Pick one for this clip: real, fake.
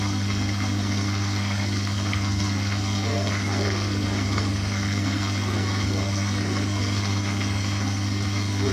fake